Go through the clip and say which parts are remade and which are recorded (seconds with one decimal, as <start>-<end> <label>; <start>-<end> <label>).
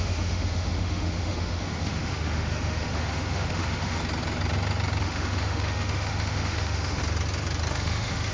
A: 0.0-4.0 remade; 4.0-5.0 recorded; 5.0-7.0 remade; 7.0-7.7 recorded; 7.7-8.3 remade